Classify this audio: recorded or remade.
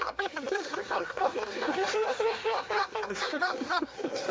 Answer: remade